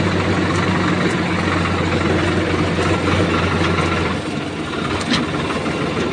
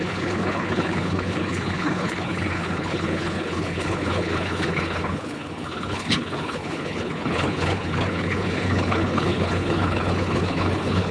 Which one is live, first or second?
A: first